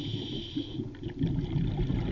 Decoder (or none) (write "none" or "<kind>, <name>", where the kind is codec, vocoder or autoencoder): none